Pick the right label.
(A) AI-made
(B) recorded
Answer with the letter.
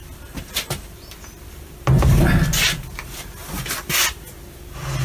B